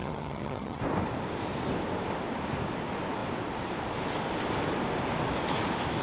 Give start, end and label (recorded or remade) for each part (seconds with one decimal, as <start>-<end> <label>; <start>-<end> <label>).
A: 0.0-0.8 remade; 0.8-6.0 recorded